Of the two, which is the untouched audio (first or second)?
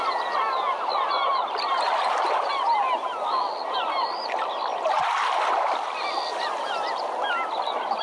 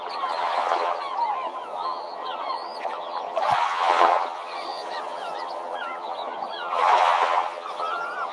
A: first